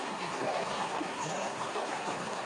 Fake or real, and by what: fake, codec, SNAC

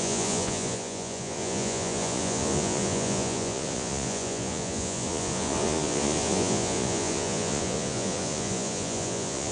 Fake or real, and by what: fake, vocoder, Vocos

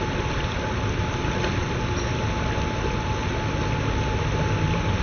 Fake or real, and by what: real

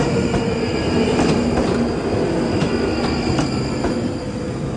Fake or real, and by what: real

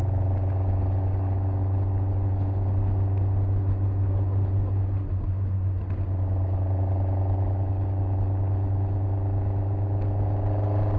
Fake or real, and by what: real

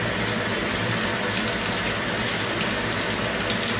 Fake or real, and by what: real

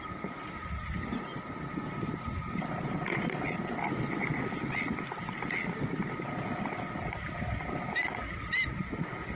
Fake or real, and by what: real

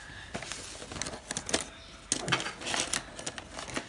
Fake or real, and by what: real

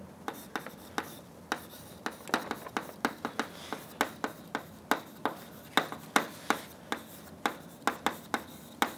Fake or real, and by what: real